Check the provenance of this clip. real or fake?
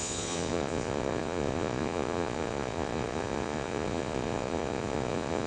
fake